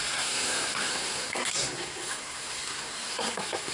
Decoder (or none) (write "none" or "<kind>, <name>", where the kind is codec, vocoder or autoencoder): codec, SNAC